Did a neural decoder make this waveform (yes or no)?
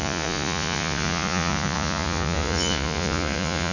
yes